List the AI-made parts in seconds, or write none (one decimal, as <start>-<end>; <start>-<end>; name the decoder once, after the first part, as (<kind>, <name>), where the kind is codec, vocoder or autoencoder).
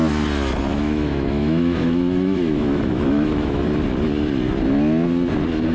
0.7-3.6 (autoencoder, DAC-VAE)